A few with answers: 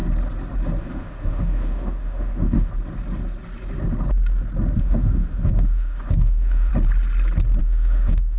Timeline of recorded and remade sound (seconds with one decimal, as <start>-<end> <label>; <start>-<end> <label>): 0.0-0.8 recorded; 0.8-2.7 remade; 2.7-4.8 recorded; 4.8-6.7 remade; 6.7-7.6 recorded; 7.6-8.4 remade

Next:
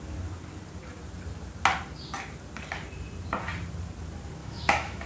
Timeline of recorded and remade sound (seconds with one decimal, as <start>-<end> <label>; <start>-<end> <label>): 0.0-4.4 recorded; 4.4-5.1 remade

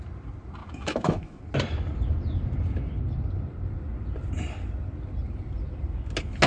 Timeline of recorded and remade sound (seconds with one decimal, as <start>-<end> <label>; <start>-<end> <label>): 0.0-0.6 recorded; 0.6-1.4 remade; 1.4-6.5 recorded

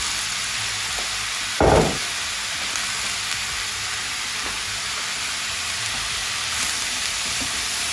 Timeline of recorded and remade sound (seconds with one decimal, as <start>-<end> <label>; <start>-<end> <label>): 0.0-7.9 recorded